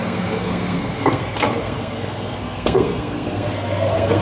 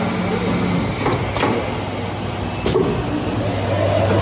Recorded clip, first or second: second